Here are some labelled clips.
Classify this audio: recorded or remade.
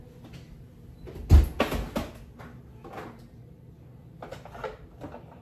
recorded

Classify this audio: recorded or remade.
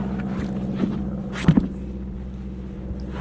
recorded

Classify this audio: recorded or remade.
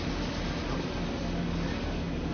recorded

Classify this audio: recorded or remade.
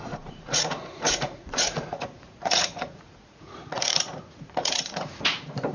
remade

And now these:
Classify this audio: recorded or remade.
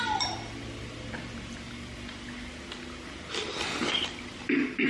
recorded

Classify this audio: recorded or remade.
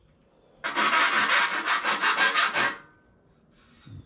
recorded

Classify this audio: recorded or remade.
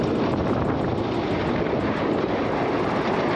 recorded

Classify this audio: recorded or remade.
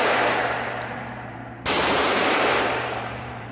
remade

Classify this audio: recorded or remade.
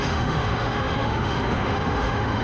remade